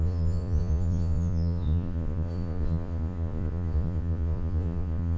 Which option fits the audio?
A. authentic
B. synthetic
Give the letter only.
B